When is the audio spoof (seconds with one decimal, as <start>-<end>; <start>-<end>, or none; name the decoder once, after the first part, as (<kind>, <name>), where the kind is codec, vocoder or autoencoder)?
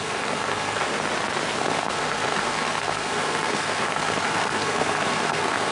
0.0-0.9 (codec, SNAC); 1.6-5.7